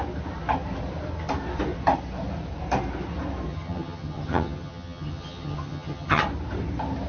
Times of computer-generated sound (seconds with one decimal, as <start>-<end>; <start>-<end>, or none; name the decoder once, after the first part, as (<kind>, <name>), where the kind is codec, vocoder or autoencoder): 3.5-6.2 (vocoder, HiFi-GAN)